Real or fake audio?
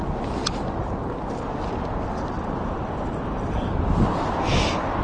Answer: real